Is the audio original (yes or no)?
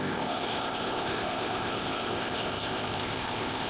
no